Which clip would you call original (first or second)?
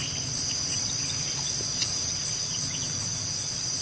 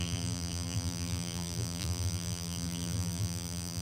first